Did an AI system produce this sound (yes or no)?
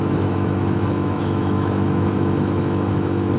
yes